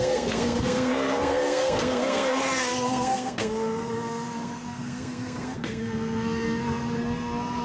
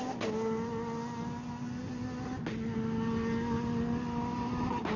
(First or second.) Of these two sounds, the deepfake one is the first